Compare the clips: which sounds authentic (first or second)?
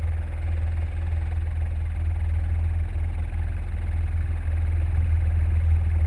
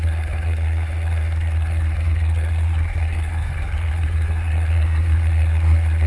first